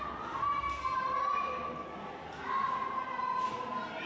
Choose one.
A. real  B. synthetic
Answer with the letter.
A